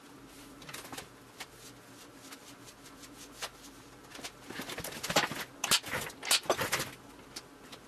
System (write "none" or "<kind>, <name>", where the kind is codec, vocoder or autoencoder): none